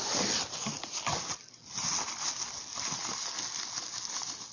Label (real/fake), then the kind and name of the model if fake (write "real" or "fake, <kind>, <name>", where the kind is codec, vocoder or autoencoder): real